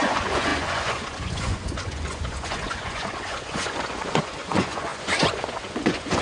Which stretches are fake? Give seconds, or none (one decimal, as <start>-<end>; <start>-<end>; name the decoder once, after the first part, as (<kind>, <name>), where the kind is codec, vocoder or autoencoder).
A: 0.0-6.2 (vocoder, Vocos)